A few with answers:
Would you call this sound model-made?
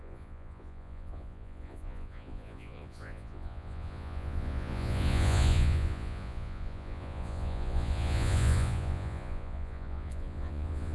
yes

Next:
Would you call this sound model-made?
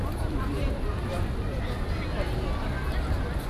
no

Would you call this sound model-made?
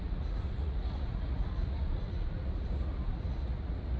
yes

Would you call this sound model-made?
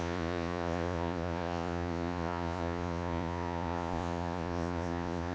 yes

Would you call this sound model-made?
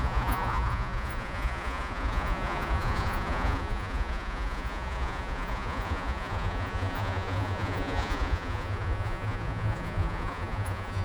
yes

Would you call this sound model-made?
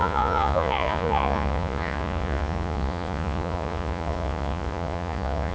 yes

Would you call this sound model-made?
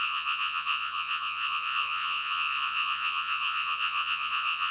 yes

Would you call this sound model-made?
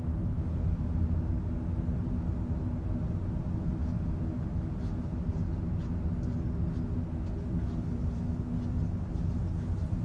no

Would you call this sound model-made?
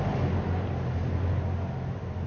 no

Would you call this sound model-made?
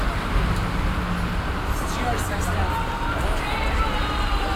no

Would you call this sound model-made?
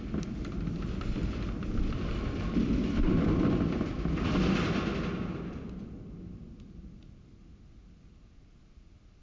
no